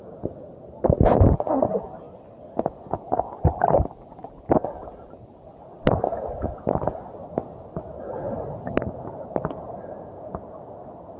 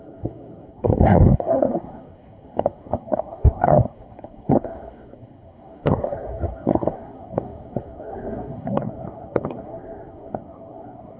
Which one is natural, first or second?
first